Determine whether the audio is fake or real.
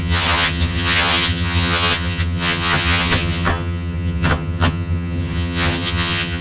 fake